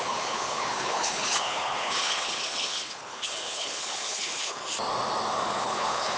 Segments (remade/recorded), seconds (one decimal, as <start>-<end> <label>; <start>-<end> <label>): 0.0-4.6 remade; 4.6-5.6 recorded; 5.6-6.2 remade